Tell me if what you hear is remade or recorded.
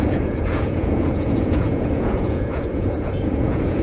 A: remade